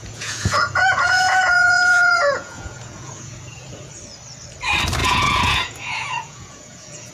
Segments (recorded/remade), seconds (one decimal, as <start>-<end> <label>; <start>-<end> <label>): 0.0-3.9 remade; 3.9-5.0 recorded; 5.0-7.1 remade